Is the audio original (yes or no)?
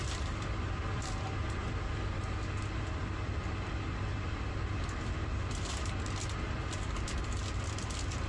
yes